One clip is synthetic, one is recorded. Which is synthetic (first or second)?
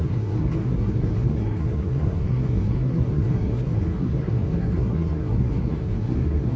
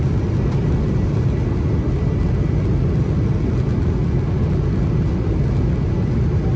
first